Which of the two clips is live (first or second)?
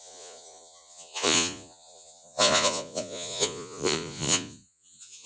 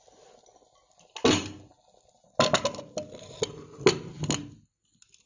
second